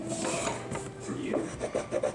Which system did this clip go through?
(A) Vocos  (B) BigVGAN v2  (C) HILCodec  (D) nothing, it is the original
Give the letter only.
D